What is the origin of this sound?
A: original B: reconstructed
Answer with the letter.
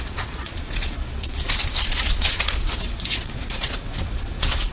B